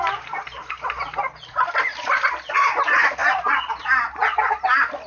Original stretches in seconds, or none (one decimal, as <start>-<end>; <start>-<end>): 0.0-5.1